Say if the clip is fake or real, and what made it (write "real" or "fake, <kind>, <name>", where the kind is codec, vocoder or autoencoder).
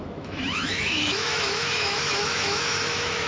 fake, autoencoder, DAC-VAE